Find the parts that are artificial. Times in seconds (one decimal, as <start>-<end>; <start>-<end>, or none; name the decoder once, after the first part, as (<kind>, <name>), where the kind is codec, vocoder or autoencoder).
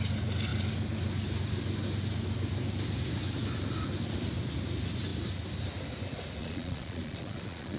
6.4-7.8 (vocoder, Vocos)